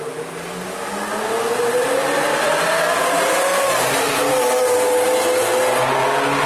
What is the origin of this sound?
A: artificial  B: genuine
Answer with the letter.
B